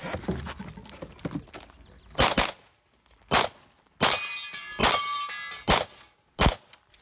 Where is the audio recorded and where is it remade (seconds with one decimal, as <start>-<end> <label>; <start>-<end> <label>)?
0.0-7.0 recorded